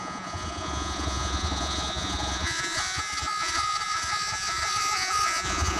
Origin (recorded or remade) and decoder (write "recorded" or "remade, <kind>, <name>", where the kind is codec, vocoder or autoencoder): remade, vocoder, Vocos